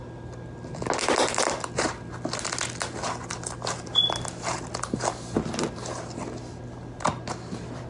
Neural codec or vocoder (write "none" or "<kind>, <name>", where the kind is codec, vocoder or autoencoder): none